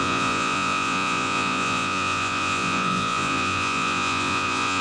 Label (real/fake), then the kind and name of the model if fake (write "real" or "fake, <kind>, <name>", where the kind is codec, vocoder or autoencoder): fake, vocoder, Vocos